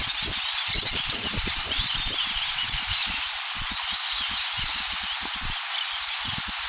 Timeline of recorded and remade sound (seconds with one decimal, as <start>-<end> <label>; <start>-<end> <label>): 0.0-0.8 recorded; 0.8-3.0 remade; 3.0-6.7 recorded